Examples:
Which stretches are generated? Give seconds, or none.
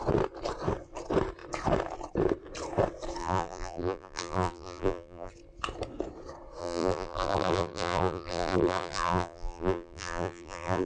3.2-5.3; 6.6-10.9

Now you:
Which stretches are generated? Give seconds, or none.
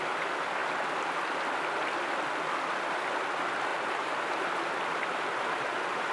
3.7-4.6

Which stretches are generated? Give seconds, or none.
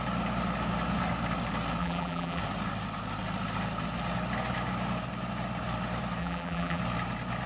1.8-2.4; 6.2-6.8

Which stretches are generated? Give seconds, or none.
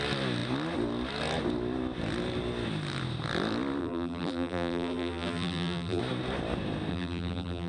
3.8-6.0; 6.9-7.7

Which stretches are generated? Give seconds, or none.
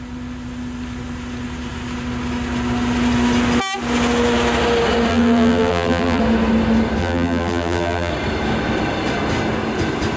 5.1-6.2; 7.0-8.1